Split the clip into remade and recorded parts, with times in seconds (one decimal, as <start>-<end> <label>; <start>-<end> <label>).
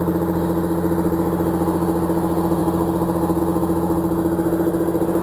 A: 0.0-5.2 recorded